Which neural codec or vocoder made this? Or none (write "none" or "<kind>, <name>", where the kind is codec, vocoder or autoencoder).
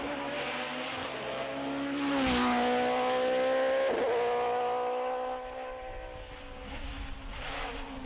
none